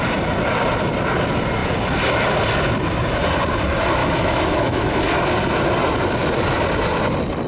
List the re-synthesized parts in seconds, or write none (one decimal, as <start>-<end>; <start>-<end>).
4.0-5.0